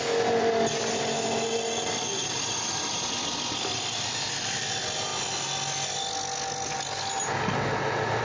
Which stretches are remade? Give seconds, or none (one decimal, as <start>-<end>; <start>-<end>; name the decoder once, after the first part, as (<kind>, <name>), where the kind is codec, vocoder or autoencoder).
none